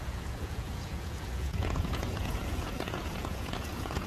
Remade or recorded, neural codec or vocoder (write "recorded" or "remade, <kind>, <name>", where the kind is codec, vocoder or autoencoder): remade, vocoder, Vocos